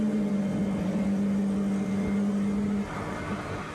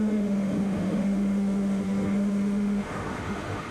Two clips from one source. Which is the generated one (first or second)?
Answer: second